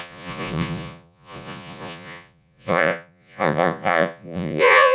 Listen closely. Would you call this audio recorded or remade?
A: remade